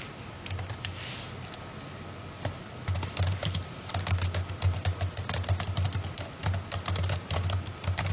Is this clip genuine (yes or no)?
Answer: yes